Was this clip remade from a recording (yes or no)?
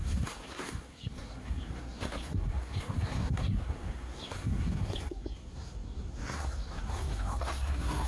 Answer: yes